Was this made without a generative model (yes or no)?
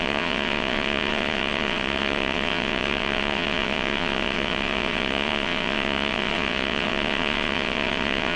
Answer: no